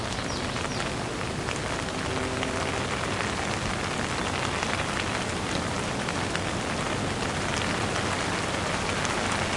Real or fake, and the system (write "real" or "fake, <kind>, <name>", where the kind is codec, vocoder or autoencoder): real